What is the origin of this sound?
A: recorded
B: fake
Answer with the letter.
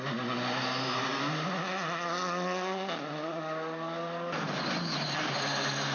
A